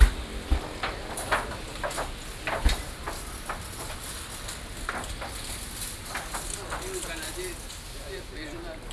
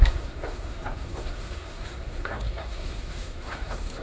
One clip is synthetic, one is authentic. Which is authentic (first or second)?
first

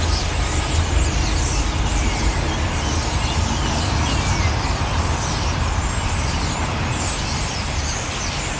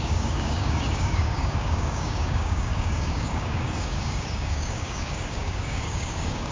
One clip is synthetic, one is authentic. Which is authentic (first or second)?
first